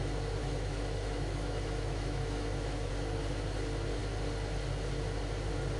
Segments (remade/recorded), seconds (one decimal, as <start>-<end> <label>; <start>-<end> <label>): 0.0-0.4 recorded; 0.4-2.9 remade; 2.9-5.8 recorded